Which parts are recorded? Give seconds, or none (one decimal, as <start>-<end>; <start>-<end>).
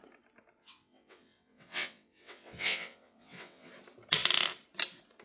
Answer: 0.0-0.6; 3.7-5.2